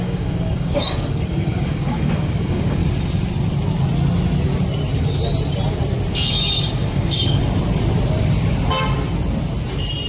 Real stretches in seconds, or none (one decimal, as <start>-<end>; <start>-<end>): 2.8-6.1; 7.4-10.1